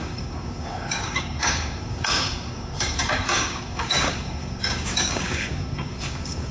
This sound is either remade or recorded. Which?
remade